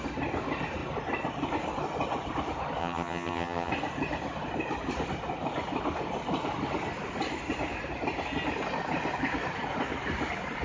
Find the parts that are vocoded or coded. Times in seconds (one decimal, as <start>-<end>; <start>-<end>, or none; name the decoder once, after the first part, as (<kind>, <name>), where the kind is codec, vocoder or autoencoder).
2.8-3.7 (vocoder, HiFi-GAN)